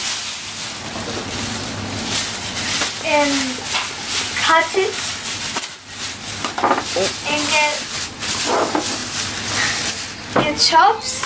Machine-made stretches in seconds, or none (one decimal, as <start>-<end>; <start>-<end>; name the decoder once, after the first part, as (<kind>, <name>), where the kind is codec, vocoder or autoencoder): none